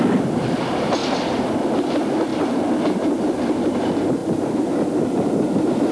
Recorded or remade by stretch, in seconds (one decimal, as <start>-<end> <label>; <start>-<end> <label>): 0.0-1.0 recorded; 1.0-1.5 remade; 1.5-2.3 recorded; 2.3-2.8 remade; 2.8-5.9 recorded